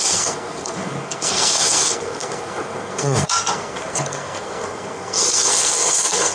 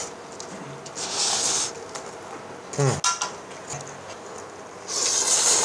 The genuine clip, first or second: second